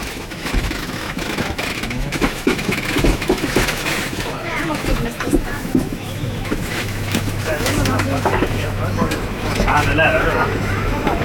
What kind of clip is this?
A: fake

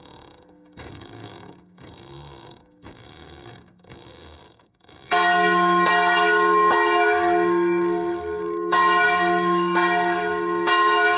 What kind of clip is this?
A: fake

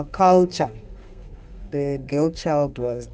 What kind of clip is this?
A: fake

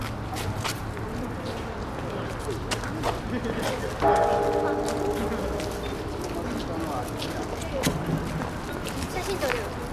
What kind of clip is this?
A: real